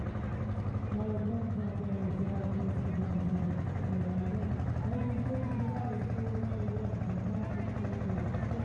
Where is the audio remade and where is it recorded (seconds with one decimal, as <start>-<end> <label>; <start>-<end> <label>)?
0.0-2.0 recorded; 2.0-3.4 remade; 3.4-8.6 recorded